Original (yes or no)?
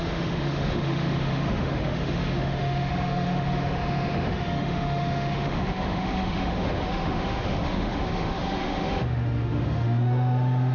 no